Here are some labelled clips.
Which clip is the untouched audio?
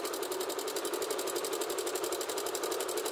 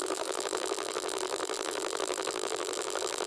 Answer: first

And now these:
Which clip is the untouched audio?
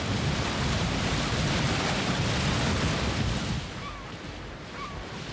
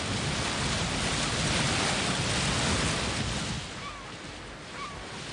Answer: second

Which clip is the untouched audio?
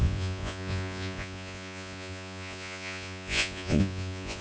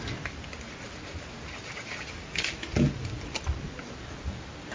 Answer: second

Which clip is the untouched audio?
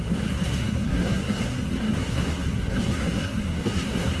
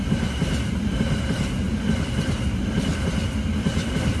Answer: second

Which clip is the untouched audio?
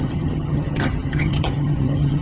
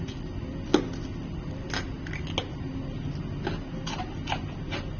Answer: second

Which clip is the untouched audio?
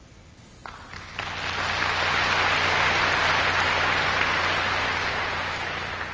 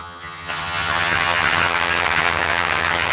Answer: first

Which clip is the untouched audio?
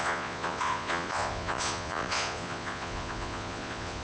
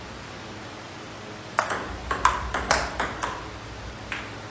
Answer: second